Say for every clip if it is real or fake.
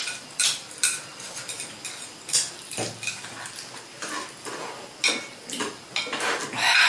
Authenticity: real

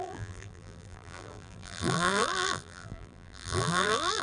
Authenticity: fake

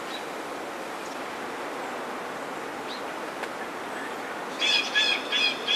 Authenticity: real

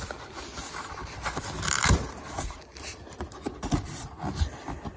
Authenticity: fake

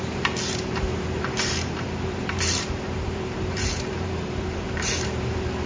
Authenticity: fake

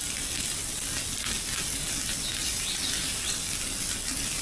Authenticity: real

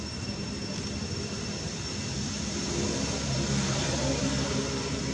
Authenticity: fake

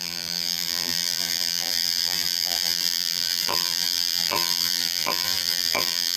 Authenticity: fake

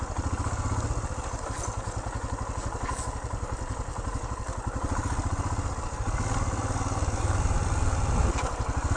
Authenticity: real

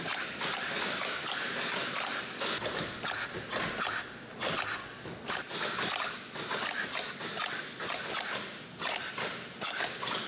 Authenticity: real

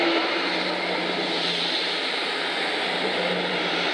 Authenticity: fake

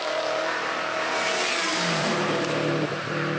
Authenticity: fake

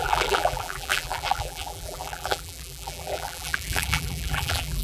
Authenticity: fake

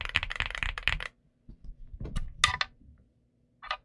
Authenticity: real